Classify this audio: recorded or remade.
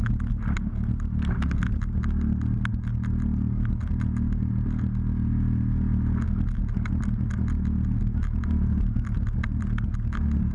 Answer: recorded